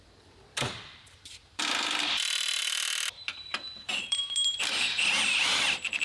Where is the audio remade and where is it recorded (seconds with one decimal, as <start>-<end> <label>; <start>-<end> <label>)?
0.0-6.0 remade